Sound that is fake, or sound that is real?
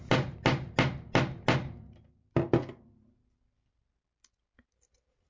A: real